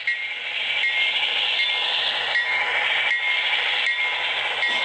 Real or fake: real